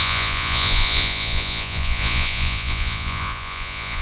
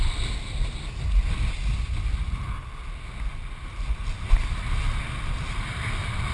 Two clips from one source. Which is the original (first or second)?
second